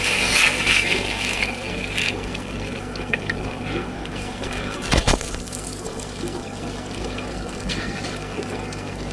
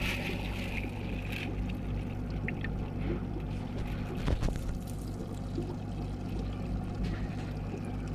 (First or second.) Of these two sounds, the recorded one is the second